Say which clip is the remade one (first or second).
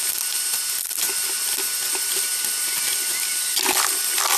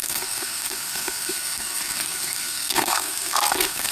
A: second